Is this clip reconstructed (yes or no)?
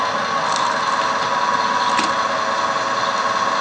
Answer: no